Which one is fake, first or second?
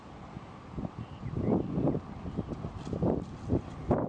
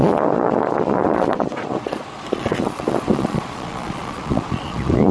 second